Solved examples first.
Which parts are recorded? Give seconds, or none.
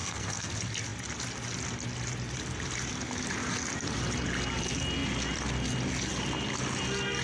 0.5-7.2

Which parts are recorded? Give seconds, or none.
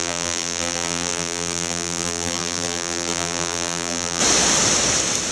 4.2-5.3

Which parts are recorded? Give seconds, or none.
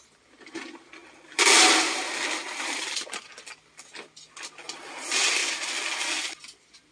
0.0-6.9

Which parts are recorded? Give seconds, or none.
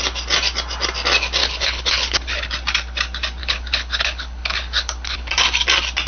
0.0-1.4; 2.5-3.4; 5.3-6.1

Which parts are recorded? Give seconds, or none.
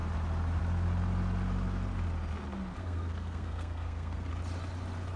0.0-2.8; 4.3-5.2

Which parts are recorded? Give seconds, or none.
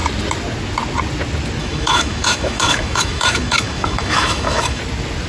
0.0-1.6; 4.8-5.3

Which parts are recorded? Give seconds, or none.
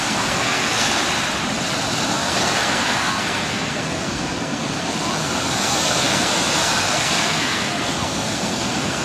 1.0-2.1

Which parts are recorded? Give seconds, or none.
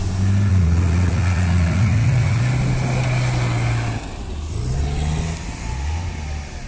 0.0-0.5; 2.4-6.7